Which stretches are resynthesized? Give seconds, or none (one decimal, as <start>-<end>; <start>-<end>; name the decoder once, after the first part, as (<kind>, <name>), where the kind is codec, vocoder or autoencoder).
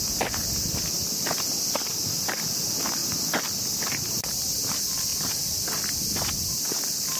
none